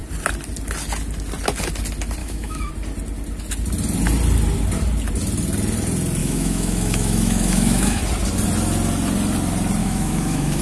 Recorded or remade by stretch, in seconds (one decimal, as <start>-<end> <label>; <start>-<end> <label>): 0.0-2.2 recorded; 2.2-2.7 remade; 2.7-6.2 recorded; 6.2-8.0 remade; 8.0-9.8 recorded; 9.8-10.6 remade